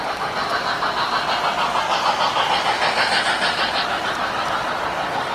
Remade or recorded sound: recorded